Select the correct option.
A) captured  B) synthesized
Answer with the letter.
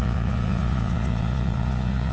B